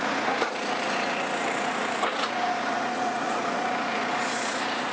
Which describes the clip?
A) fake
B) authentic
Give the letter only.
A